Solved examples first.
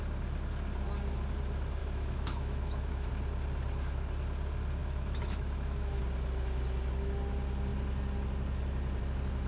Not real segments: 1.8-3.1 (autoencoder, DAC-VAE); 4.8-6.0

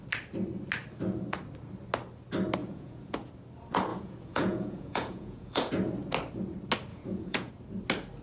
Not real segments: 2.6-3.3 (vocoder, Vocos); 3.9-5.7; 6.9-7.5

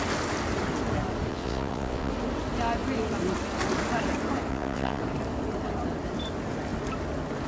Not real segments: 1.3-2.1 (vocoder, WaveNeXt); 4.5-5.0

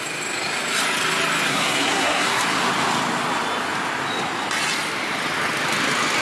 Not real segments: 1.5-2.4 (codec, SNAC)